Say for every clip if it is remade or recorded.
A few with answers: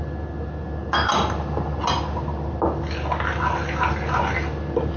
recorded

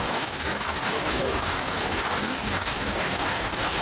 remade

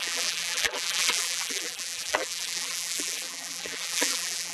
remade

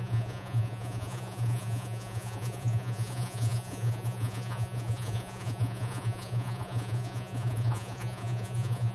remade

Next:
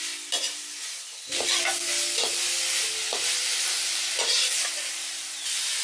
recorded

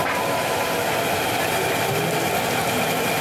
recorded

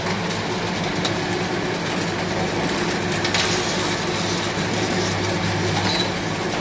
recorded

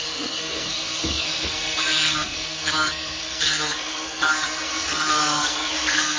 remade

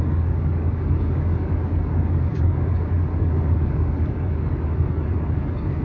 remade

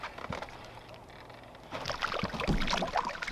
recorded